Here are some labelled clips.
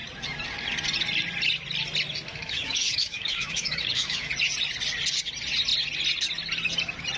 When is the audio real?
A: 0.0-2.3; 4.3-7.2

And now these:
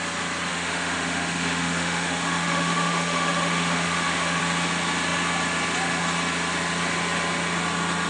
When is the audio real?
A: 0.0-0.5; 4.4-8.1

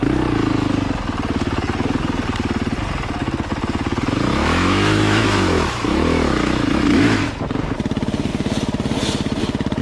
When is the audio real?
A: 0.0-4.3; 7.3-9.8

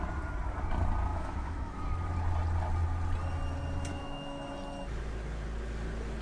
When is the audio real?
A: 0.0-1.1; 1.8-3.9; 4.5-6.2

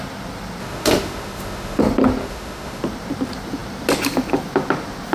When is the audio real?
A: 0.0-0.6; 1.8-2.2; 2.8-5.1

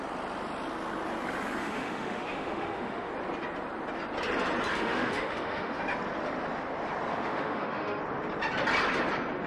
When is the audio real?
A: 0.0-1.6; 3.1-4.7; 5.8-7.1; 8.0-9.5

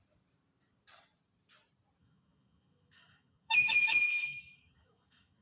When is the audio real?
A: 0.0-2.0

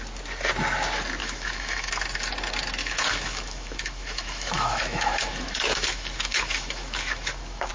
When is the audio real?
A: 0.0-1.2; 1.9-2.8